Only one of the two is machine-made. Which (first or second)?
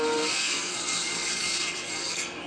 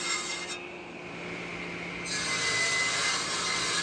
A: first